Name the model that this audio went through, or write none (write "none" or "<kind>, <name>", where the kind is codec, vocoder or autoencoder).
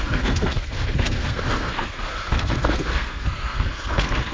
codec, SNAC